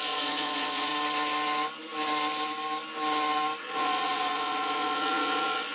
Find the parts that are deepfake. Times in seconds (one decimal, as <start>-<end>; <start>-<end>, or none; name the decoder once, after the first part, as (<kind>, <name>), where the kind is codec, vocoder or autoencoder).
0.0-0.9 (vocoder, Vocos); 3.6-5.7